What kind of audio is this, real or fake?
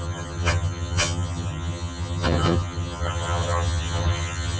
fake